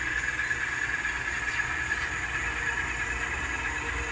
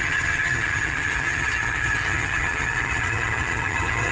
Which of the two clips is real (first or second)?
first